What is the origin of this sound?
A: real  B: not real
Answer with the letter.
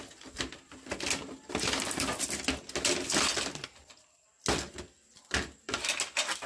A